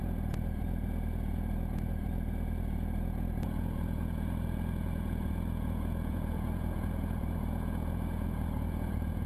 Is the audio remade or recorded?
remade